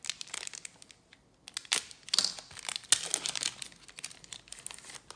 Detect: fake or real real